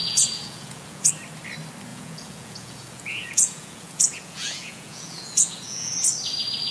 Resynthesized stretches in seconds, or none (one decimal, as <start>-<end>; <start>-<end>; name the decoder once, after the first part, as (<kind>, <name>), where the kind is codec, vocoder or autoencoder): 0.0-1.1 (vocoder, Vocos); 1.9-5.9